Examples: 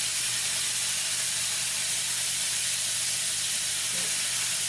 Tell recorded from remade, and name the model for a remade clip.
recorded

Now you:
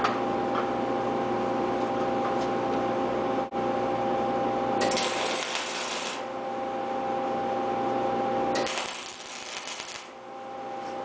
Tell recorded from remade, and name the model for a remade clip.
recorded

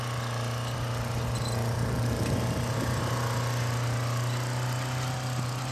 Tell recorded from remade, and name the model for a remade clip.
recorded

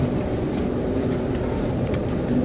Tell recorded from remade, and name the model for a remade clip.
remade, vocoder, BigVGAN v2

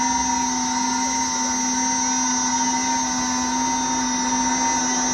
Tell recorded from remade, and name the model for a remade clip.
recorded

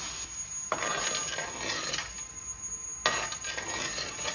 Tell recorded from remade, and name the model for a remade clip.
recorded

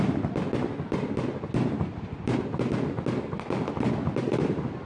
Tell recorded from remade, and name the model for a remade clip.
recorded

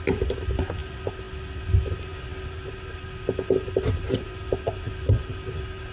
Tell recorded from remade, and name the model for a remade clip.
recorded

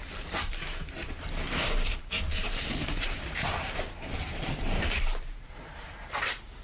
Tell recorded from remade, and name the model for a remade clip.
remade, vocoder, BigVGAN v2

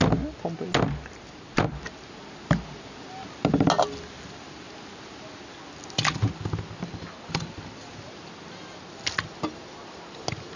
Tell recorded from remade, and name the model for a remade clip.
recorded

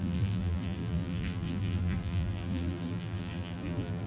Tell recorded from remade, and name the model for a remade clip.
remade, vocoder, BigVGAN v2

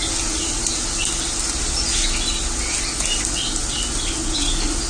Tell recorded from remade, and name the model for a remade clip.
recorded